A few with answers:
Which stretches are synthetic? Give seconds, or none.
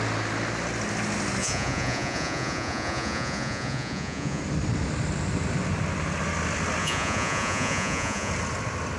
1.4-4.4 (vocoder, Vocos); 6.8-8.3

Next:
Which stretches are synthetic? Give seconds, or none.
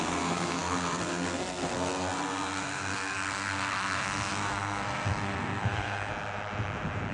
0.0-6.1 (codec, SNAC)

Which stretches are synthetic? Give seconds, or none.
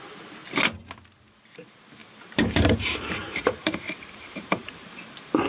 2.0-5.5 (vocoder, BigVGAN v2)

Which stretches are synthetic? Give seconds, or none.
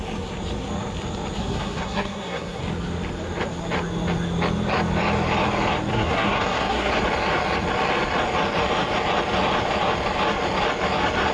1.4-2.6 (codec, SNAC); 5.9-6.9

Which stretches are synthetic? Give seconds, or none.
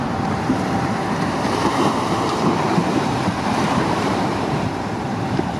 0.0-5.6 (vocoder, BigVGAN v2)